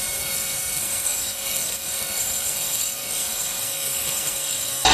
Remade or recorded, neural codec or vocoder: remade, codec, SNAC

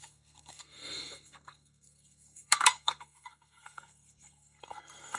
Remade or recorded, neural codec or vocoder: remade, codec, SNAC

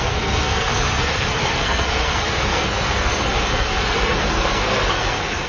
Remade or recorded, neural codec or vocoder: remade, codec, SNAC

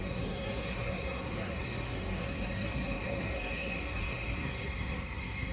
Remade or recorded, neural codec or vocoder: remade, codec, SNAC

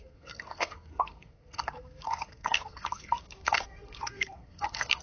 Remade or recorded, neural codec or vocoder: remade, codec, SNAC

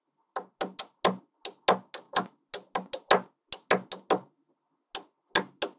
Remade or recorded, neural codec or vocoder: recorded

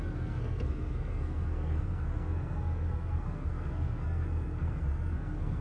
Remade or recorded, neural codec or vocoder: remade, codec, SNAC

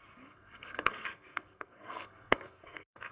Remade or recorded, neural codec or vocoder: remade, codec, SNAC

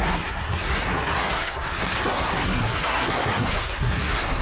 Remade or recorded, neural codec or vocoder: remade, codec, SNAC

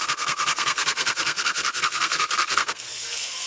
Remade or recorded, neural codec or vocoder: remade, codec, SNAC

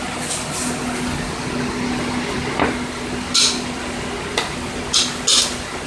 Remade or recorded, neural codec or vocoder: recorded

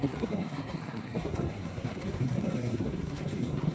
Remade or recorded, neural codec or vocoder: remade, codec, SNAC